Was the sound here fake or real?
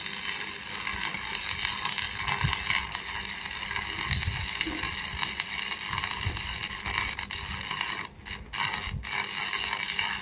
real